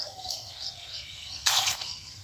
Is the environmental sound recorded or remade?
remade